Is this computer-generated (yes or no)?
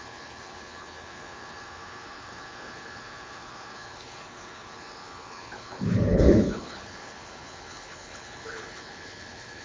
yes